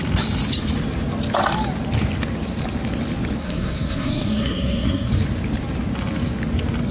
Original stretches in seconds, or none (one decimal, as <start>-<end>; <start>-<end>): 0.0-3.4; 5.1-6.9